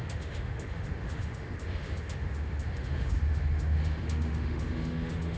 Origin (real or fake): fake